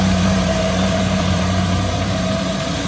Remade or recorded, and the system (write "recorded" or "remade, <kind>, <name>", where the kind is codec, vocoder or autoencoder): remade, vocoder, BigVGAN v2